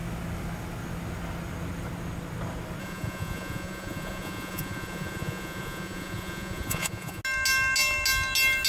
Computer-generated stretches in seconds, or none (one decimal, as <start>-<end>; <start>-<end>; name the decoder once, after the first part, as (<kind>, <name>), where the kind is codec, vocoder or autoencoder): 2.8-7.2 (vocoder, Vocos)